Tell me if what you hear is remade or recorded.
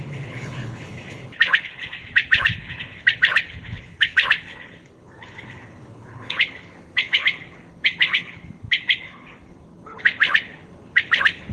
remade